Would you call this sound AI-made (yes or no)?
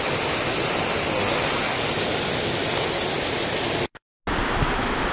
no